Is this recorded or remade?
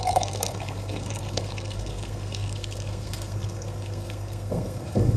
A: remade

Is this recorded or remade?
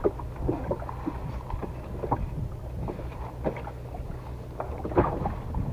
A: recorded